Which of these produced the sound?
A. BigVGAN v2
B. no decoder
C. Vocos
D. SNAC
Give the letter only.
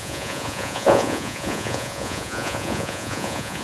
C